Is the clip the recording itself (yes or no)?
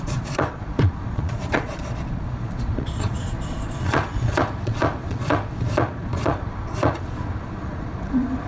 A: no